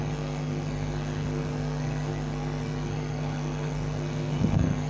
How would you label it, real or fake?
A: fake